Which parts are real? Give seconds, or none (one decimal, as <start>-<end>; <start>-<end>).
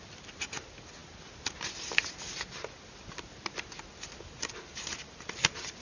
0.0-5.8